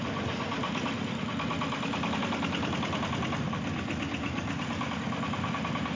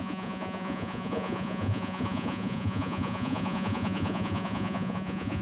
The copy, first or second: second